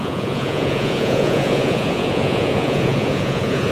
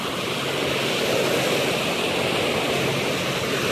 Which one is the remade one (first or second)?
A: first